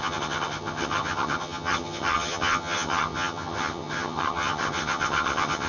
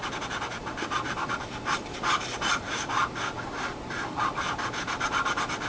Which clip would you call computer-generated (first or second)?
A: first